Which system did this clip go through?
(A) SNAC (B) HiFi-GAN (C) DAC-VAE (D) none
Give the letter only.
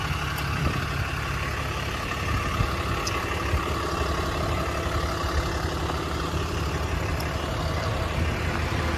D